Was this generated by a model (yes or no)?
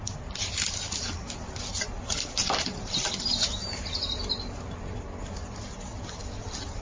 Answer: no